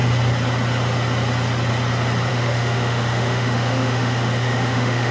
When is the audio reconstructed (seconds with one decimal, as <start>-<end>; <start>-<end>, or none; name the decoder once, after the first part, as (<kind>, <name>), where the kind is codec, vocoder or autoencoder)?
2.3-5.1 (autoencoder, DAC-VAE)

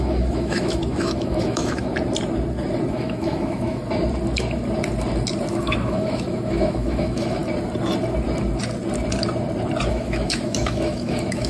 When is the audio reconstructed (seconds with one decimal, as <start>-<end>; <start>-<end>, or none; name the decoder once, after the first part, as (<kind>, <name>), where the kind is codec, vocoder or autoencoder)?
0.0-1.9 (autoencoder, DAC-VAE); 2.9-3.8; 5.5-7.4; 9.9-11.5

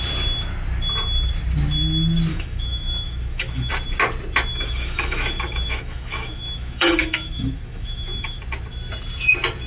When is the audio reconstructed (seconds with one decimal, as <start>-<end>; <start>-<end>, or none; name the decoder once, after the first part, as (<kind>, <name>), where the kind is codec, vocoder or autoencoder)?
2.3-3.7 (autoencoder, DAC-VAE); 4.5-8.4

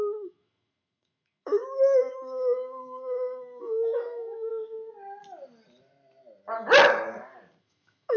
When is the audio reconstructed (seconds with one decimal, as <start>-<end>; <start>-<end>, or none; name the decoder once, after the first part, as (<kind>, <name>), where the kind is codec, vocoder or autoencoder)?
0.0-4.5 (autoencoder, DAC-VAE); 7.6-8.2